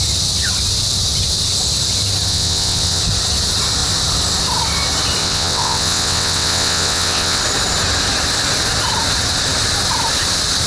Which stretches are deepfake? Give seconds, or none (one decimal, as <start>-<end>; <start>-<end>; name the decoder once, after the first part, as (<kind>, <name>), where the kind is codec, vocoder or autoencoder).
2.3-3.0 (vocoder, WaveNeXt); 5.2-7.4